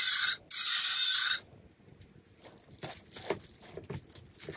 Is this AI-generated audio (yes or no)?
no